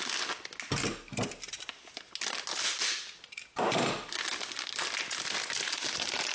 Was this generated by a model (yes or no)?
no